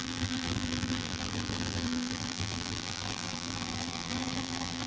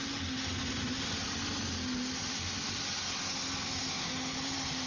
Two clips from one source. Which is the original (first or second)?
second